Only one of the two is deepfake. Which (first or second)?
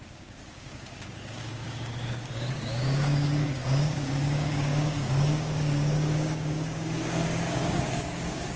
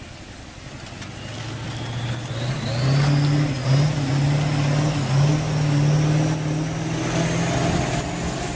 first